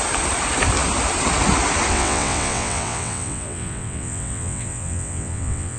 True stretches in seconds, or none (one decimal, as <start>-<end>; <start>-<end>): 0.0-1.9